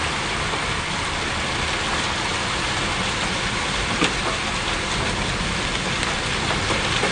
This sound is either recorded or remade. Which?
recorded